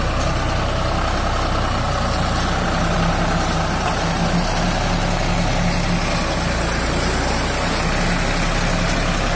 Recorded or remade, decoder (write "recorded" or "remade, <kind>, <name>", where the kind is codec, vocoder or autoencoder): recorded